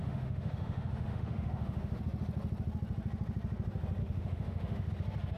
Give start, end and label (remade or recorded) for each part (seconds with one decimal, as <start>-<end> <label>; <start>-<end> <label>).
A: 0.0-2.0 remade; 2.0-4.0 recorded; 4.0-4.9 remade; 4.9-5.4 recorded